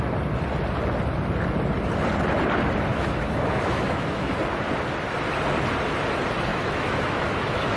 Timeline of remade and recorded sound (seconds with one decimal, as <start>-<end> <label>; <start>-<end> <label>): 0.0-2.9 recorded; 2.9-4.4 remade; 4.4-6.5 recorded; 6.5-7.8 remade